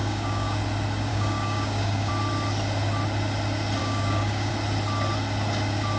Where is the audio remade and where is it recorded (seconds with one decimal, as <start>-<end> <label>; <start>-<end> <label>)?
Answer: 0.0-0.6 remade; 0.6-1.1 recorded; 1.1-2.1 remade; 2.1-3.8 recorded; 3.8-4.5 remade; 4.5-6.0 recorded